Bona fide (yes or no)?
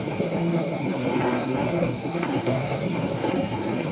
no